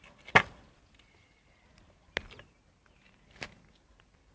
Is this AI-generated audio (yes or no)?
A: no